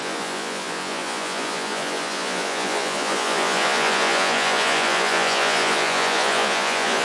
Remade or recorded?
remade